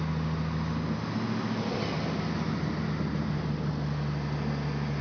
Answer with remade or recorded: recorded